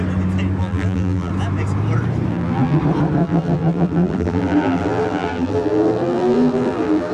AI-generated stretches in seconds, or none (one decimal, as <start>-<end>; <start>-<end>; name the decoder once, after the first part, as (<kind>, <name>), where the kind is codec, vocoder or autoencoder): 0.6-1.3 (vocoder, BigVGAN v2); 2.3-2.8; 3.2-7.1